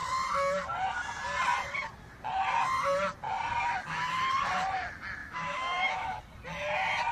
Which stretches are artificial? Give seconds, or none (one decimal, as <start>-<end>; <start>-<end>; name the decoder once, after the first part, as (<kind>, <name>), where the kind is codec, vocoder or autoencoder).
5.2-6.2 (autoencoder, DAC-VAE)